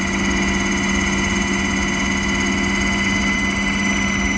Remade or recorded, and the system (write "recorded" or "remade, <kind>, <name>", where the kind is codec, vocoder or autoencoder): recorded